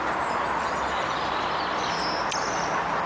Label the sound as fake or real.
real